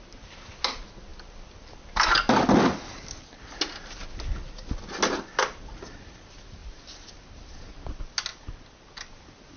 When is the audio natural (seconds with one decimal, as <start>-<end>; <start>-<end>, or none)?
0.0-8.3; 9.1-9.6